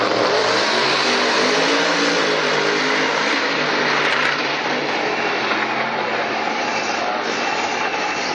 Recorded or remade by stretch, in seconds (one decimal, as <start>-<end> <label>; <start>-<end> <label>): 0.0-0.4 remade; 0.4-4.0 recorded; 4.0-4.7 remade; 4.7-6.3 recorded; 6.3-8.3 remade